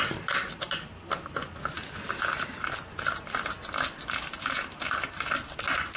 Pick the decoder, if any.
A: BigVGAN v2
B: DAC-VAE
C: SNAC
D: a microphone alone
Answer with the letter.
D